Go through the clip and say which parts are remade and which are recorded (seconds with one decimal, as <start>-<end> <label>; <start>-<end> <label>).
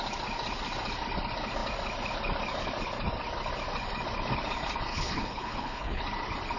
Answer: 0.0-4.9 recorded; 4.9-6.0 remade; 6.0-6.6 recorded